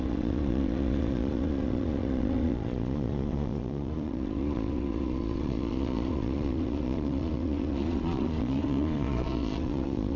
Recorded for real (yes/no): no